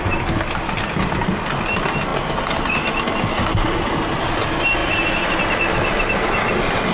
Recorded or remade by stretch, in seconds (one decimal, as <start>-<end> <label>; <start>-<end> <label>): 0.0-6.9 recorded